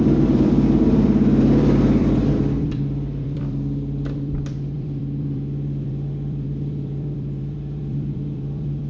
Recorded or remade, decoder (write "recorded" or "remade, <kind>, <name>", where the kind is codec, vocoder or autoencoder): remade, vocoder, BigVGAN v2